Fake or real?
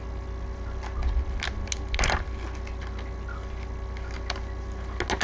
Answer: real